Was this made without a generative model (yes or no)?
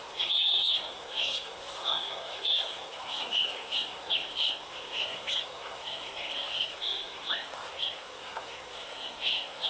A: no